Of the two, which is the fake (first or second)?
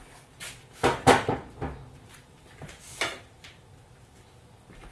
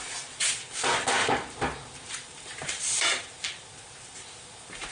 second